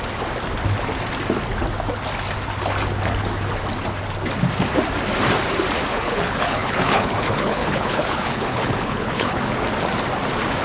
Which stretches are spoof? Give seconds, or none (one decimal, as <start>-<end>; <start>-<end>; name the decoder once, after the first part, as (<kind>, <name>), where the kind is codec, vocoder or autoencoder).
5.9-9.4 (codec, HILCodec)